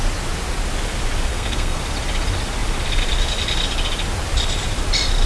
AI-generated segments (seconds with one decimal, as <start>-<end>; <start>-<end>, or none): 1.3-1.8